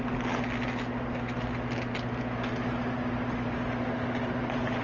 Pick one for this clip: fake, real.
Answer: real